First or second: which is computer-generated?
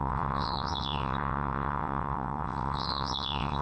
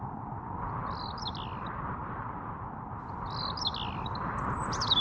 first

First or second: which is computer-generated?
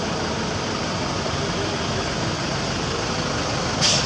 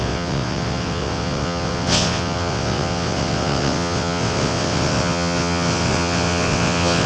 second